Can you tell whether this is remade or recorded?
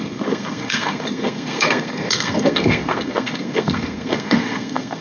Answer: remade